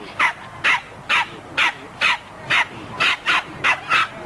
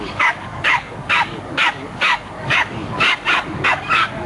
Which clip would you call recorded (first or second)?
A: first